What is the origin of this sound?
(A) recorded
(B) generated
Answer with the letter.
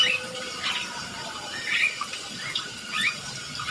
B